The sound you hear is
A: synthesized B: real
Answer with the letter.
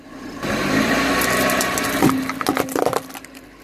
B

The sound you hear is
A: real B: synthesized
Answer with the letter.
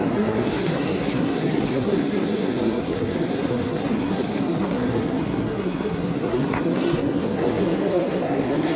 B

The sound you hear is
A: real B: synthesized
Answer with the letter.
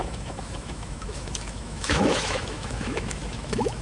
B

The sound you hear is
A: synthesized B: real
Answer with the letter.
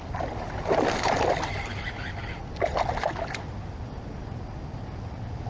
B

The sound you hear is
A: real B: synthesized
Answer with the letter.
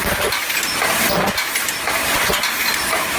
A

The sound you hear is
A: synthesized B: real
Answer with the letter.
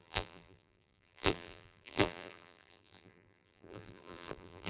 A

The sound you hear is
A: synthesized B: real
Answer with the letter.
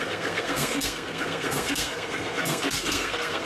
A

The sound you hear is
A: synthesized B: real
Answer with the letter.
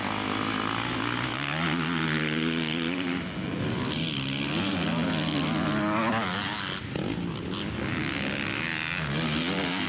B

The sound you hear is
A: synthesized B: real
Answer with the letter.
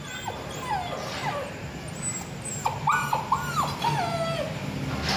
B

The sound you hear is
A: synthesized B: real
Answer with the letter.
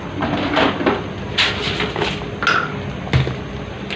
B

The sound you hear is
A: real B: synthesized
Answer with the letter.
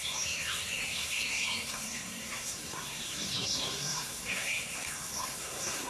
B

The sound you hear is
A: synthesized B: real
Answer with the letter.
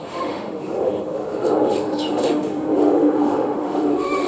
A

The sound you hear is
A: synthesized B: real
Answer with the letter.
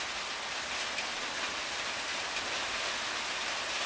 B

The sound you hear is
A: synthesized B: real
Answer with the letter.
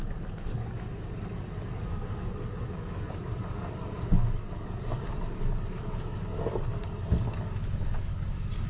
A